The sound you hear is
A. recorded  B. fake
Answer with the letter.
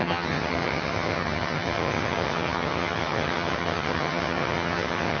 B